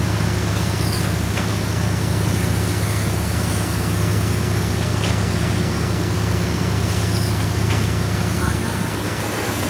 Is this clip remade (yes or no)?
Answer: yes